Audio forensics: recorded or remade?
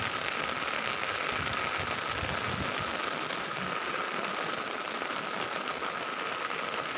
recorded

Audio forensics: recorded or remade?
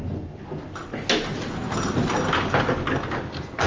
recorded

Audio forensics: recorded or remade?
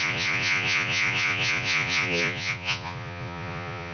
remade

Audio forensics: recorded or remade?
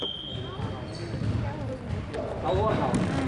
recorded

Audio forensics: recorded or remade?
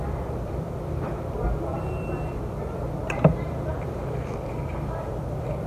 remade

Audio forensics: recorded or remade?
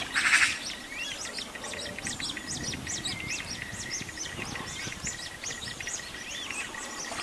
recorded